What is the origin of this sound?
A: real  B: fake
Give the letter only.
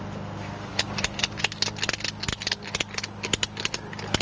A